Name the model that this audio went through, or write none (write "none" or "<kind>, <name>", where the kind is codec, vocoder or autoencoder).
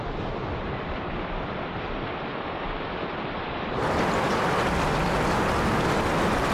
vocoder, BigVGAN v2